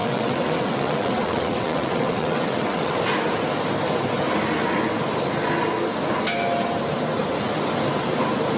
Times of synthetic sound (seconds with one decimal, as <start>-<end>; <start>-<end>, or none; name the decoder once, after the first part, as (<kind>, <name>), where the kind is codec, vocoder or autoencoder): 0.0-3.0 (vocoder, WaveNeXt)